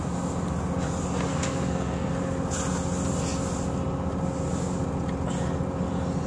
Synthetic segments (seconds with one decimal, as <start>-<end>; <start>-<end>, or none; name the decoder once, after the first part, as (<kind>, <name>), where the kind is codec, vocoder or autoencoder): 1.3-2.1 (codec, SNAC)